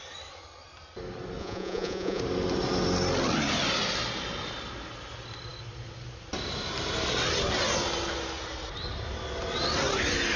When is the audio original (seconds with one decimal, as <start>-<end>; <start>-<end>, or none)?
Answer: 0.0-1.4; 2.2-10.4